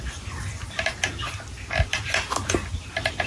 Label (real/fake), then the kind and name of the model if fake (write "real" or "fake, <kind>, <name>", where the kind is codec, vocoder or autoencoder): real